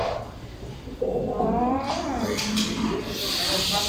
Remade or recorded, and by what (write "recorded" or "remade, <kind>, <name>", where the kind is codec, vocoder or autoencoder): recorded